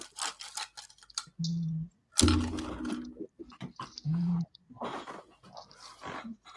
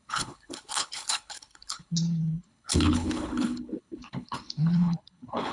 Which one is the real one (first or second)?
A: first